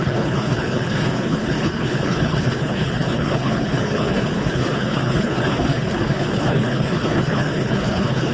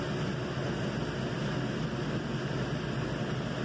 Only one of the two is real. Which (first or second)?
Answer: second